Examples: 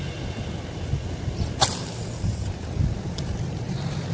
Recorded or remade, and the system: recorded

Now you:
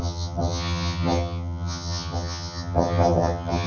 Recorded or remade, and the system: remade, vocoder, HiFi-GAN